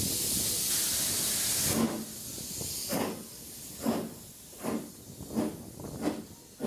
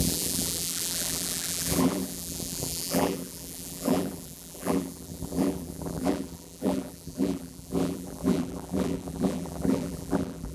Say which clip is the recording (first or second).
first